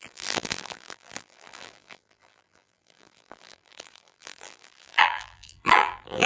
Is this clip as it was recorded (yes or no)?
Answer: no